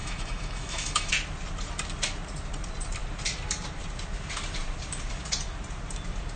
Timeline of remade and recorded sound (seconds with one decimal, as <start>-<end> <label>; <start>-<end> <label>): 0.0-1.1 remade; 1.1-6.4 recorded